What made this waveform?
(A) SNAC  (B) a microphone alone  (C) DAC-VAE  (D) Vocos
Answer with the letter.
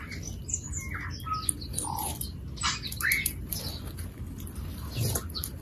B